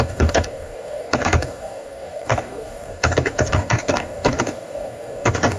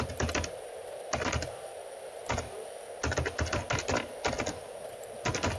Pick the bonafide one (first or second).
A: second